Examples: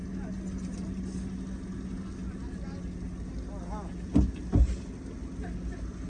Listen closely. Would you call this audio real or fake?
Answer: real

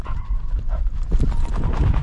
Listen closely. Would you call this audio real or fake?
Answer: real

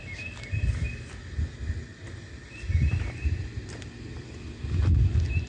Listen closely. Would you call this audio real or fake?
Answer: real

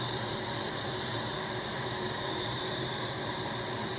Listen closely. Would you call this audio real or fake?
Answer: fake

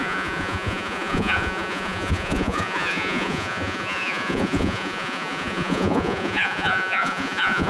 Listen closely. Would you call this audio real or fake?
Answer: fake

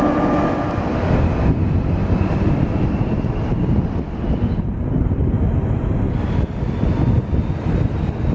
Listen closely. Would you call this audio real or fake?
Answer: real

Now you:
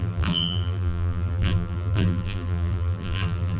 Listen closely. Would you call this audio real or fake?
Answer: fake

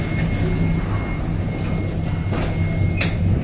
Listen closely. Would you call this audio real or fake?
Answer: real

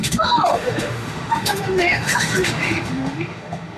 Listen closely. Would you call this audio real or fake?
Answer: fake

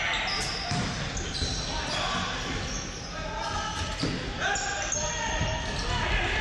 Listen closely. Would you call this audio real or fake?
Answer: real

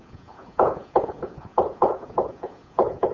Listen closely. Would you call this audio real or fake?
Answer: fake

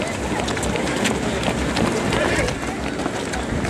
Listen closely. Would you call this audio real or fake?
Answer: real